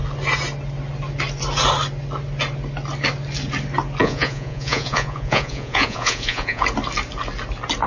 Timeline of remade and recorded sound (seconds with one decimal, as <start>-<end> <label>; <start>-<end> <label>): 0.0-4.0 recorded; 4.0-6.6 remade; 6.6-7.9 recorded